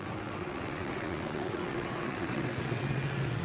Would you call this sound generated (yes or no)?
yes